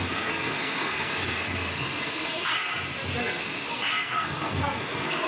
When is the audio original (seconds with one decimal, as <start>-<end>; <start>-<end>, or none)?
2.7-3.2